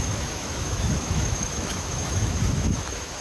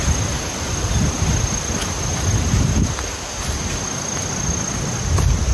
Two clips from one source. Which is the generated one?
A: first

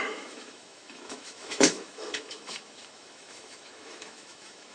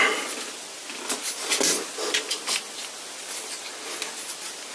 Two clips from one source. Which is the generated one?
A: first